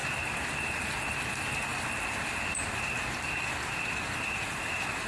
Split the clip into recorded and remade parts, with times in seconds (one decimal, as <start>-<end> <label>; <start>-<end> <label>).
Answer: 0.0-5.1 recorded